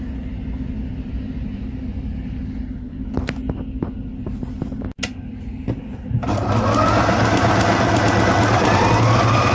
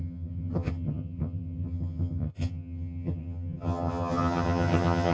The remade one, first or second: second